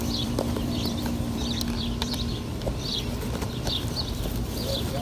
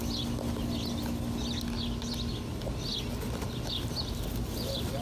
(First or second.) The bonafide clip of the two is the second